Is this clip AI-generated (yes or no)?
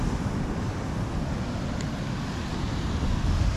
no